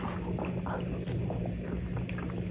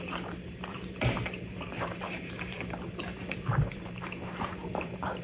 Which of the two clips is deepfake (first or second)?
second